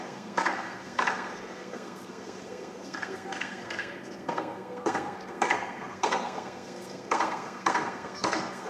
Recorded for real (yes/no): no